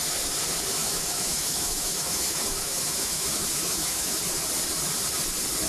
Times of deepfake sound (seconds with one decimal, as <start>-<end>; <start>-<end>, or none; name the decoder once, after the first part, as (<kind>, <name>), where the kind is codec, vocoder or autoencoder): 0.8-4.2 (autoencoder, DAC-VAE)